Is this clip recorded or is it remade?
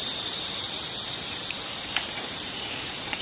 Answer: remade